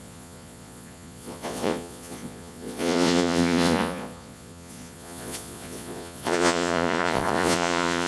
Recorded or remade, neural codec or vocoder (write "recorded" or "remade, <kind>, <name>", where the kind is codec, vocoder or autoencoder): remade, vocoder, Vocos